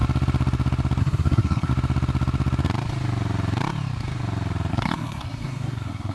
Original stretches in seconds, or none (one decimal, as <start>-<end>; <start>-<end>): 0.0-1.0; 1.7-4.7